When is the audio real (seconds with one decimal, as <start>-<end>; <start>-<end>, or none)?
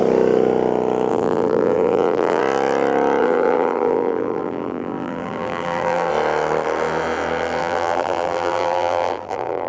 0.0-1.1; 2.4-3.2; 6.1-7.6